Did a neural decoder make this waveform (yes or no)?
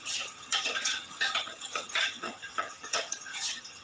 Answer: yes